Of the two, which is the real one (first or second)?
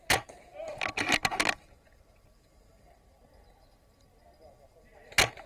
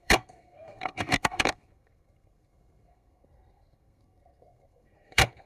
first